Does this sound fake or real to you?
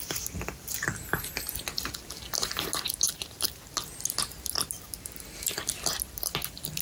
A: real